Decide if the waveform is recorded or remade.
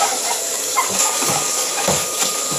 remade